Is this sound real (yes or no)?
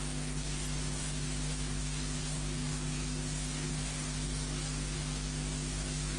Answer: no